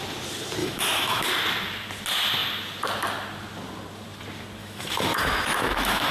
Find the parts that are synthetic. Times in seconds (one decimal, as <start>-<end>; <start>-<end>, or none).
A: 0.6-1.3; 4.6-6.1